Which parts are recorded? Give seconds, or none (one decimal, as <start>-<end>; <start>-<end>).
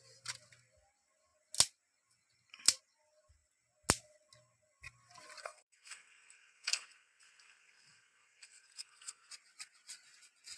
0.0-5.4; 9.3-10.6